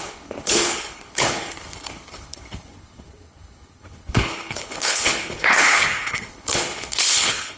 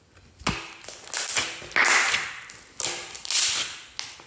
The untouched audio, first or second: second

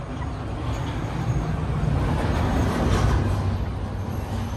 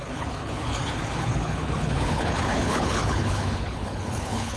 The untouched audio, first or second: first